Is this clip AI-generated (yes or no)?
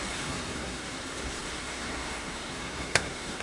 yes